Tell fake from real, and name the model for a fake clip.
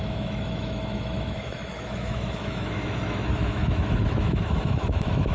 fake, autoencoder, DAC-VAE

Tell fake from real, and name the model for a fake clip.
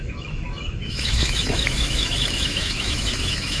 fake, autoencoder, DAC-VAE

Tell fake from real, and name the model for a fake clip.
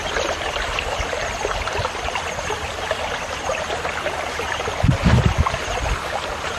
real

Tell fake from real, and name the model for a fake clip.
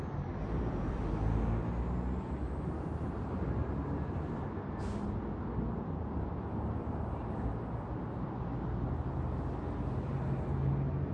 real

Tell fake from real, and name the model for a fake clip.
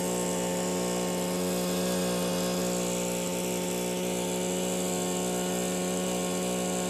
real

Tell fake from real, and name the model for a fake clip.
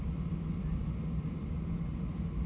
real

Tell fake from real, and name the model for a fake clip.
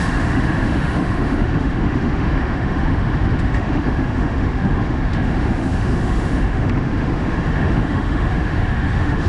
fake, autoencoder, DAC-VAE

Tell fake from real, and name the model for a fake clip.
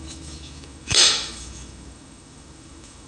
fake, autoencoder, DAC-VAE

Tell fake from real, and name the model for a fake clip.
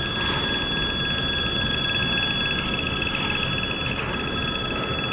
real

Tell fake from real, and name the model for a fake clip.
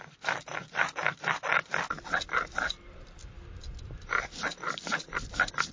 real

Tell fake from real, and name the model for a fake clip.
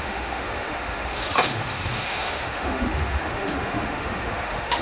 fake, autoencoder, DAC-VAE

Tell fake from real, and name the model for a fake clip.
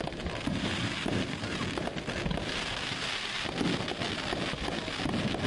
real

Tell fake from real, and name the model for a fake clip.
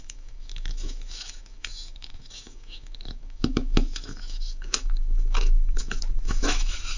fake, autoencoder, DAC-VAE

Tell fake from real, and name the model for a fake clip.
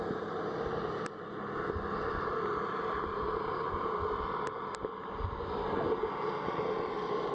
real